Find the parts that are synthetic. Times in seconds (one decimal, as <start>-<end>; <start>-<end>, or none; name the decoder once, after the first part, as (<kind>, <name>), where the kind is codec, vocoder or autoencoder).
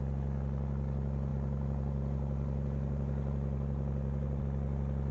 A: 1.3-4.4 (vocoder, BigVGAN v2)